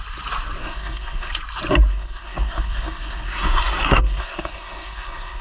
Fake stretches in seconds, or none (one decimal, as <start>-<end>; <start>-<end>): 0.6-1.3; 1.9-5.4